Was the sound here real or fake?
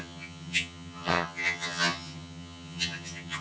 fake